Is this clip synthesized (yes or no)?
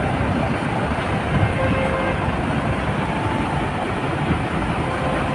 no